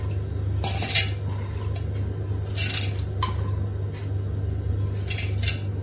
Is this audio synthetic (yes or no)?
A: no